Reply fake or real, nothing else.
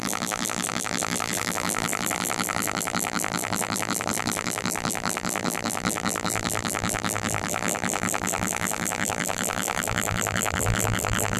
fake